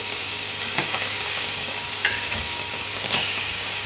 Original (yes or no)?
no